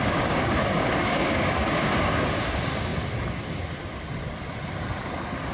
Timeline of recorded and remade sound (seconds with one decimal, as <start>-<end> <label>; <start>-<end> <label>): 0.0-2.9 remade; 2.9-5.5 recorded